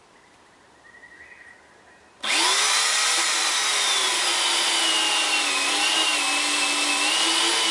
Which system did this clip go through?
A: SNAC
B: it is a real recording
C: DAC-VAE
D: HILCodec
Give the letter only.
B